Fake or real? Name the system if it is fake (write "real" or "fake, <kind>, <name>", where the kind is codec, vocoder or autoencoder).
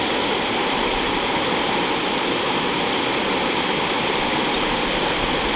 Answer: real